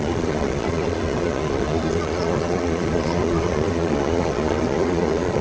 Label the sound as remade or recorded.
remade